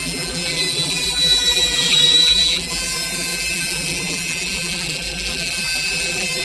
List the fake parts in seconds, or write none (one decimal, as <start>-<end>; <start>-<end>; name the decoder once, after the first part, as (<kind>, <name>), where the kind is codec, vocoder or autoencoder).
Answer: 0.0-6.4 (vocoder, BigVGAN v2)